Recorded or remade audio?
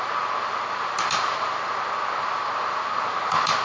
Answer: recorded